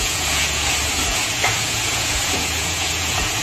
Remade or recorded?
remade